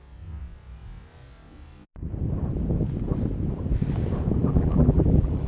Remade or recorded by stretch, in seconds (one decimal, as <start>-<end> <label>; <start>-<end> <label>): 0.0-4.4 recorded; 4.4-5.5 remade